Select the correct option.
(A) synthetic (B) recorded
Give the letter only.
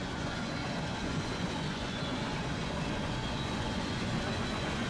A